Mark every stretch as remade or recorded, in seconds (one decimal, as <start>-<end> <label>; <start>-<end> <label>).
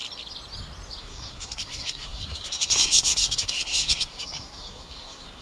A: 0.0-1.0 recorded; 1.0-5.4 remade